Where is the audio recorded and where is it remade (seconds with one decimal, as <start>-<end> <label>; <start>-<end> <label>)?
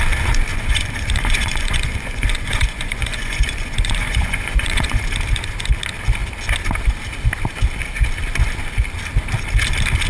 0.0-0.5 recorded; 0.5-5.0 remade; 5.0-10.1 recorded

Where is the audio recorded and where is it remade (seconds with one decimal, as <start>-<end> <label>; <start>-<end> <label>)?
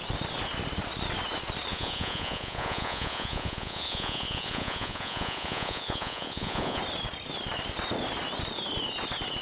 0.0-1.7 recorded; 1.7-6.8 remade; 6.8-9.4 recorded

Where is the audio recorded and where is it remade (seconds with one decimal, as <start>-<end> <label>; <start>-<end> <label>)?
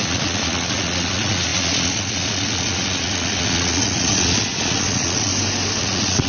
0.0-5.3 remade; 5.3-5.8 recorded; 5.8-6.3 remade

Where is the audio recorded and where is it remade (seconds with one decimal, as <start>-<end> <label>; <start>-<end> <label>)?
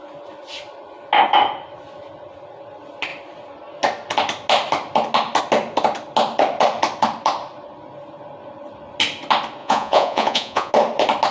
0.0-9.6 recorded; 9.6-10.7 remade; 10.7-11.3 recorded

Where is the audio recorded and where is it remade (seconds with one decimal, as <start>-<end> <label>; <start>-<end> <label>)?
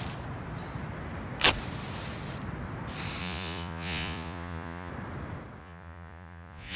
0.0-3.2 recorded; 3.2-4.9 remade; 4.9-5.6 recorded; 5.6-6.8 remade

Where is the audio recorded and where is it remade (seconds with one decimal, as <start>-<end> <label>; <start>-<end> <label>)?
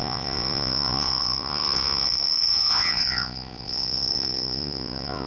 0.0-5.3 remade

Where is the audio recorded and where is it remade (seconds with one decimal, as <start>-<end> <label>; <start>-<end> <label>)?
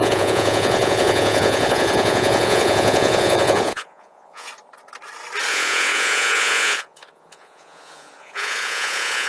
0.0-4.5 remade; 4.5-5.5 recorded; 5.5-9.3 remade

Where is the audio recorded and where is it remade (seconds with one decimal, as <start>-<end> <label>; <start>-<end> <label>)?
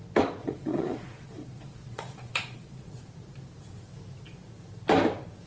0.0-0.4 recorded; 0.4-3.0 remade; 3.0-5.5 recorded